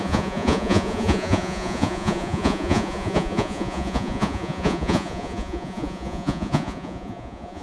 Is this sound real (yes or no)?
no